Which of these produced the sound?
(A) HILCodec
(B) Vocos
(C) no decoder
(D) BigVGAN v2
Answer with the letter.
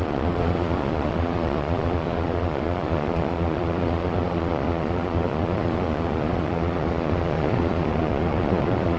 B